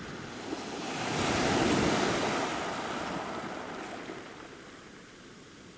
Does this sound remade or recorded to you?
recorded